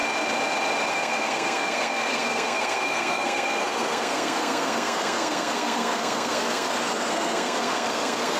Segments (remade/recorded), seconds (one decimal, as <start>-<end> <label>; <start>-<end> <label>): 0.0-0.9 recorded; 0.9-8.4 remade